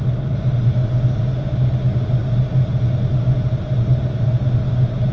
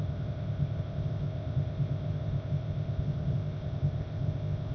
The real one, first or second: first